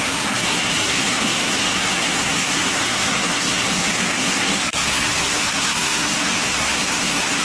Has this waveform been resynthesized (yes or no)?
yes